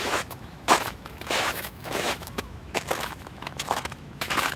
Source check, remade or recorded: remade